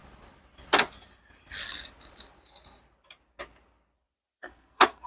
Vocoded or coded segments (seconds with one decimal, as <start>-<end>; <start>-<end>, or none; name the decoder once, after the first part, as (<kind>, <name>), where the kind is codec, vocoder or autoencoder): 4.4-5.1 (codec, SNAC)